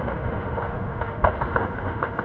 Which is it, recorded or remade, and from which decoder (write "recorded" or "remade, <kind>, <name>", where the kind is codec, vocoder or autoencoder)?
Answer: remade, autoencoder, DAC-VAE